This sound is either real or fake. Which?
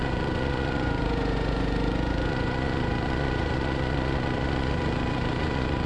fake